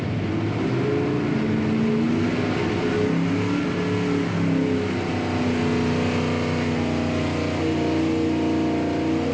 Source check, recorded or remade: recorded